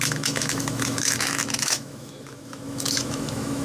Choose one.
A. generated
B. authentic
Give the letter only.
A